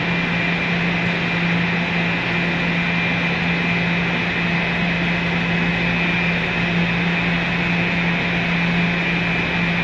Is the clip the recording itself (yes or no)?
yes